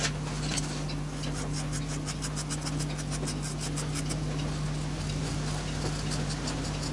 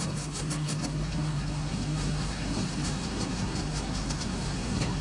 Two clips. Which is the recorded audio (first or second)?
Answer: first